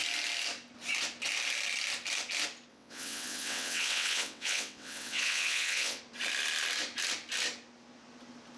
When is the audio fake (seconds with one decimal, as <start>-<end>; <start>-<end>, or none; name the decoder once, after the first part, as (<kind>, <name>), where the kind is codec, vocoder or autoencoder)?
2.7-6.0 (vocoder, WaveNeXt)